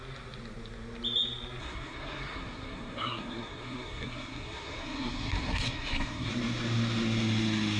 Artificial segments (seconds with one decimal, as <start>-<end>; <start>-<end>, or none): 1.6-6.3